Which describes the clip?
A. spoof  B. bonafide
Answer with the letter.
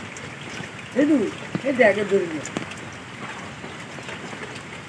B